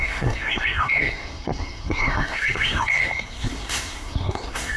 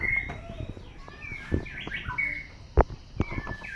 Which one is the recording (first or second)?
second